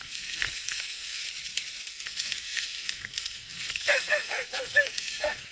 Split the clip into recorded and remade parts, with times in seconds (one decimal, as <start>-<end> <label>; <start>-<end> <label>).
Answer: 0.0-1.2 remade; 1.2-1.9 recorded; 1.9-5.5 remade